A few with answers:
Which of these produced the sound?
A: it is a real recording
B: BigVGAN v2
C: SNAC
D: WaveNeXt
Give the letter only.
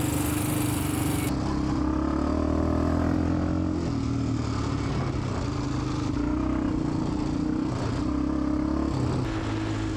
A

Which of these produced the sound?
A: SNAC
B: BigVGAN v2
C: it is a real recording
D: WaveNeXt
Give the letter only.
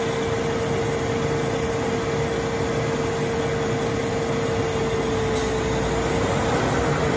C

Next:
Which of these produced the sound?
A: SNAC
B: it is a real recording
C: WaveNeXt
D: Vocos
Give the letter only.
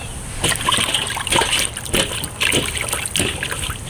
B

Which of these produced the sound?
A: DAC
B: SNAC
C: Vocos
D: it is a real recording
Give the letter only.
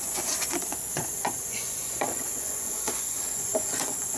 C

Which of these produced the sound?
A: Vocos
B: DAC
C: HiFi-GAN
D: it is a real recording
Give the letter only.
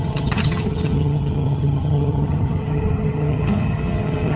C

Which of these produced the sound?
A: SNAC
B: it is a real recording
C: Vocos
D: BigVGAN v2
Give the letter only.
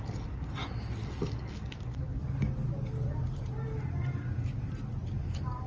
B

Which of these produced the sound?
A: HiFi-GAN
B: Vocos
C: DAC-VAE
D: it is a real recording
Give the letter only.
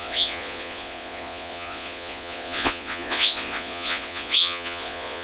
B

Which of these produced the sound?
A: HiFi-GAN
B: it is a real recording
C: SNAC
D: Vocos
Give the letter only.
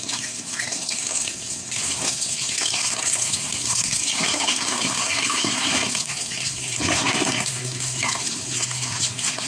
C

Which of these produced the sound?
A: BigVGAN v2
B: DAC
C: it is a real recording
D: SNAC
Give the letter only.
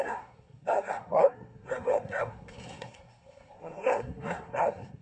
D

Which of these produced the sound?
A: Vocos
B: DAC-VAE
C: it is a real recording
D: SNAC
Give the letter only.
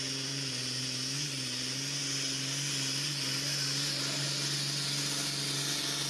C